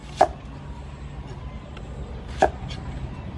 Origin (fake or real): real